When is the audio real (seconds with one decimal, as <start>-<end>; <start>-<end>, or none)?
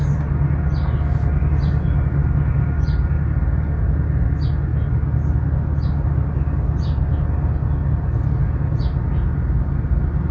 0.0-10.3